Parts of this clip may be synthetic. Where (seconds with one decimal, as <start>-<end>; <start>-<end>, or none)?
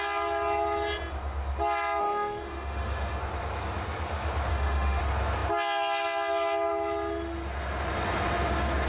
2.0-3.2; 4.5-5.0